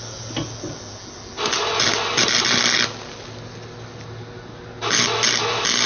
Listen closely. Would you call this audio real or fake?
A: real